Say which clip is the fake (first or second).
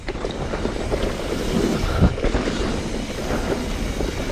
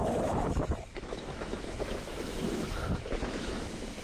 second